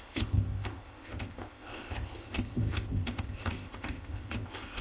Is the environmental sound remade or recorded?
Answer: remade